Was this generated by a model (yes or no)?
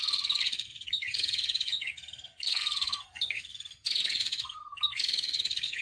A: yes